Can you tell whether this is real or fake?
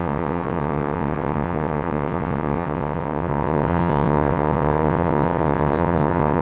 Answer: fake